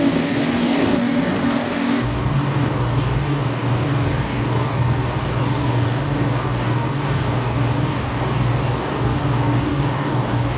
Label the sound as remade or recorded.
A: remade